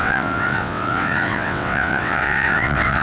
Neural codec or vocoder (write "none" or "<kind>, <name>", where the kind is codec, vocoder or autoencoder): vocoder, WaveNeXt